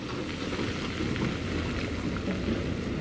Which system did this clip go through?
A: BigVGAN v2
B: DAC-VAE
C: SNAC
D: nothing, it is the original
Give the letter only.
D